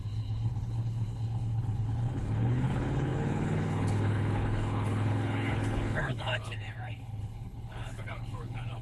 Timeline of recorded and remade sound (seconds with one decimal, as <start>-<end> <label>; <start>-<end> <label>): 0.0-8.8 remade